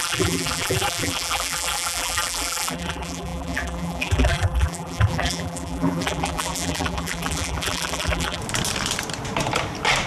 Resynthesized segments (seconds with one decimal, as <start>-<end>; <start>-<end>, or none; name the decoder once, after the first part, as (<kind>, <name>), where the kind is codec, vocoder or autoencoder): 0.0-8.4 (vocoder, BigVGAN v2)